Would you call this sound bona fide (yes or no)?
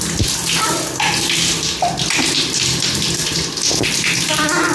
yes